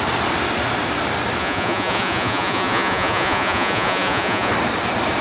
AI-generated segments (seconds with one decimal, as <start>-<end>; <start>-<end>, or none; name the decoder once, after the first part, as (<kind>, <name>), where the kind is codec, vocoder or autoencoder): 1.4-4.5 (vocoder, Vocos)